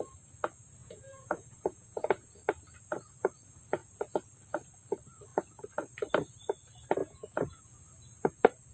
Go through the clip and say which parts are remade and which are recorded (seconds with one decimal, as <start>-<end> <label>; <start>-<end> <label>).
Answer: 0.0-0.8 recorded; 0.8-2.3 remade; 2.3-7.0 recorded; 7.0-7.6 remade; 7.6-8.7 recorded